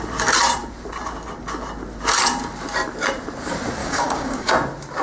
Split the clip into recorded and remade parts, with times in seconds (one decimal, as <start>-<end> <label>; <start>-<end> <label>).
0.0-3.8 recorded; 3.8-4.5 remade; 4.5-5.0 recorded

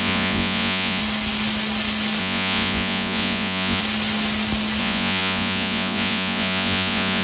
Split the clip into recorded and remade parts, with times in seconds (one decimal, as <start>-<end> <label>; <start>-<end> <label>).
0.0-1.0 remade; 1.0-2.2 recorded; 2.2-3.8 remade; 3.8-4.8 recorded; 4.8-7.2 remade

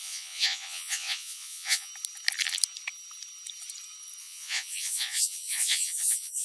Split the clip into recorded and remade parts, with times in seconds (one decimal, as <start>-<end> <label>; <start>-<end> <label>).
0.0-1.9 remade; 1.9-4.2 recorded; 4.2-6.4 remade

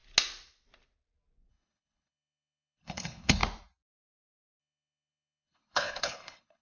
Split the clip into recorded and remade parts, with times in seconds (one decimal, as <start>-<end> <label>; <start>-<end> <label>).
0.0-1.5 recorded; 1.5-3.4 remade; 3.4-4.6 recorded; 4.6-6.6 remade

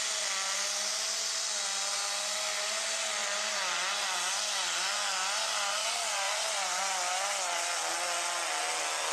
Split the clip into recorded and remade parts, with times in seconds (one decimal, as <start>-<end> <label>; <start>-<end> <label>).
0.0-5.8 recorded; 5.8-6.8 remade; 6.8-9.1 recorded

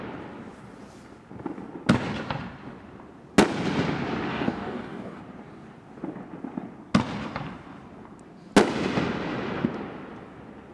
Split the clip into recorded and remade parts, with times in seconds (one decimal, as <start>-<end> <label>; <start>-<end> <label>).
0.0-4.3 recorded; 4.3-5.2 remade; 5.2-10.7 recorded

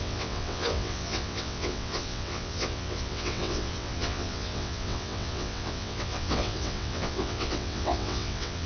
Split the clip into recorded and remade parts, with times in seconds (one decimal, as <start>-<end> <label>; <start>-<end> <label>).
0.0-8.7 remade

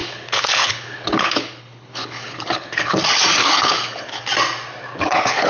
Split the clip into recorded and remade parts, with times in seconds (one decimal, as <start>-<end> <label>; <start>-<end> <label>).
0.0-3.0 remade; 3.0-3.4 recorded; 3.4-4.2 remade; 4.2-4.9 recorded; 4.9-5.5 remade